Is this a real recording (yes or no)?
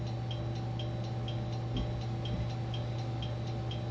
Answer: yes